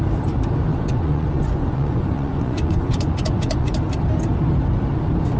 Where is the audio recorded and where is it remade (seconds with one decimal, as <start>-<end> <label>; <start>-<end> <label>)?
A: 0.0-0.7 recorded; 0.7-3.8 remade; 3.8-5.4 recorded